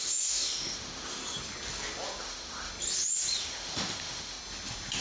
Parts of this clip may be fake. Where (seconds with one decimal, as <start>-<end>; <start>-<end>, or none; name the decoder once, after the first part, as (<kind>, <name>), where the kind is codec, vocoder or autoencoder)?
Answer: 0.0-1.2 (autoencoder, DAC-VAE); 2.2-2.7; 3.4-4.4